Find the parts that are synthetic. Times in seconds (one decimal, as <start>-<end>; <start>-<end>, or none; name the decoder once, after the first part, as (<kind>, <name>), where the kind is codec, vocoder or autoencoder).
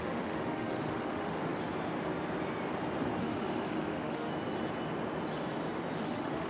0.0-1.5 (autoencoder, DAC-VAE); 3.2-4.3; 6.0-6.5